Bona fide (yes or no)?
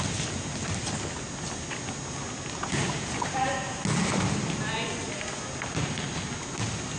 yes